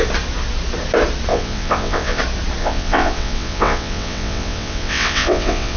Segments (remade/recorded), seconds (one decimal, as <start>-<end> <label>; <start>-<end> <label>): 0.0-1.3 recorded; 1.3-2.2 remade; 2.2-2.6 recorded; 2.6-5.8 remade